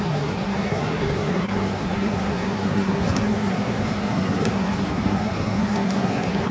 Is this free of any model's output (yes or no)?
no